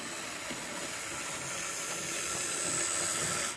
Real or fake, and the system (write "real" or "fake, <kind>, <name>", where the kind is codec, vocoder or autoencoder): real